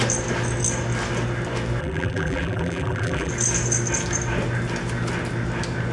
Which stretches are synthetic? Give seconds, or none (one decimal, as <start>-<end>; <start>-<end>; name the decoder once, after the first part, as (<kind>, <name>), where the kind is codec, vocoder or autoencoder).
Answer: 1.8-3.3 (vocoder, BigVGAN v2)

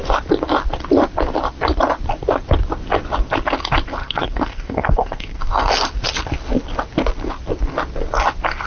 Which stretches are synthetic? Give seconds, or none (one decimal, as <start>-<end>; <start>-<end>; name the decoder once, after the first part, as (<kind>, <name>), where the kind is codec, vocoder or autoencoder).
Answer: 4.0-5.7 (codec, SNAC)

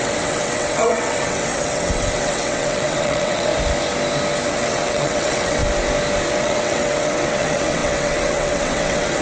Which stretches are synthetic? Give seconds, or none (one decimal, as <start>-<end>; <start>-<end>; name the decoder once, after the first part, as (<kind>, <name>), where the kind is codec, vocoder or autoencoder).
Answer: 0.0-3.5 (vocoder, WaveNeXt); 4.5-5.6; 6.3-9.2